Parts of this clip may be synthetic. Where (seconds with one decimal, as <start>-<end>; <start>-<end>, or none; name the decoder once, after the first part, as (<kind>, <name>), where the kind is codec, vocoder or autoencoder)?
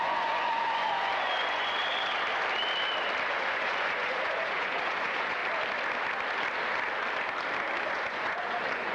0.0-1.8 (vocoder, Vocos); 3.3-5.4; 7.9-8.9